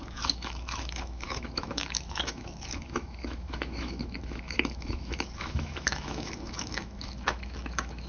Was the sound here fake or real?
fake